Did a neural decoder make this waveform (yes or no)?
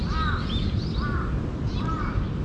no